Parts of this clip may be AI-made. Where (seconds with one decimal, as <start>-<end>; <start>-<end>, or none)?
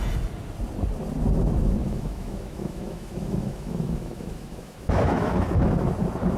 1.8-5.6